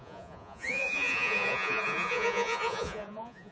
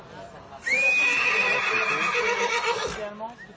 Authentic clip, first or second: second